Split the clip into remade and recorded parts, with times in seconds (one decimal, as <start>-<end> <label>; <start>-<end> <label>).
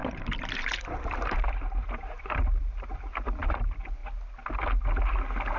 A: 0.0-4.0 remade; 4.0-5.6 recorded